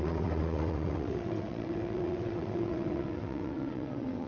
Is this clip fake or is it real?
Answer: fake